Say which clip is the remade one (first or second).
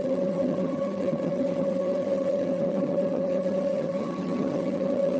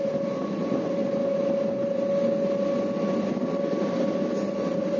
first